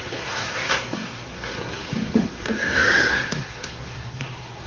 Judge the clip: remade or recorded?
remade